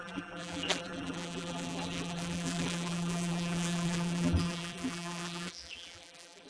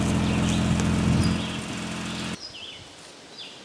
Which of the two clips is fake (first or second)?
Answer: first